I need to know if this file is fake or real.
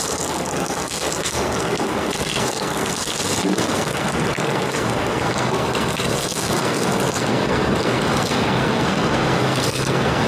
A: fake